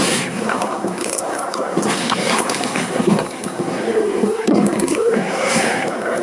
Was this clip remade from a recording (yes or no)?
yes